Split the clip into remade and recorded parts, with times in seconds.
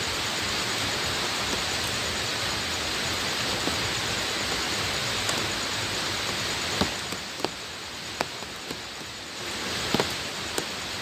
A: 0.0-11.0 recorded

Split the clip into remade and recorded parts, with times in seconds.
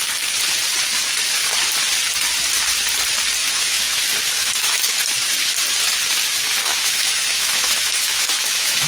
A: 0.0-3.4 recorded; 3.4-4.0 remade; 4.0-4.4 recorded; 4.4-4.9 remade; 4.9-6.6 recorded; 6.6-8.9 remade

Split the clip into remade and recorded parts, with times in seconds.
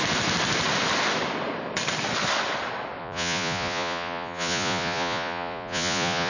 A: 0.0-3.0 recorded; 3.0-6.3 remade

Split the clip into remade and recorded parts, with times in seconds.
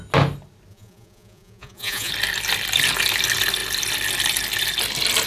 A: 0.0-0.7 recorded; 0.7-2.1 remade; 2.1-5.3 recorded